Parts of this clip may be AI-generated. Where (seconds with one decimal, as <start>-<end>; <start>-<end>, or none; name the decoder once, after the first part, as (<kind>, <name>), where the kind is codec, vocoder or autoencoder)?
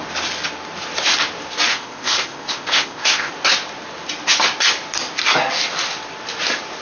1.7-3.3 (codec, ZipCodec)